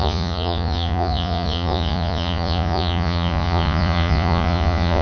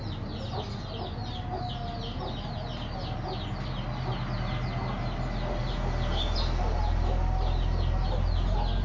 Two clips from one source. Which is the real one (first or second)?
second